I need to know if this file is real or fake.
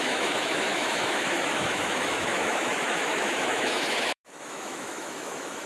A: fake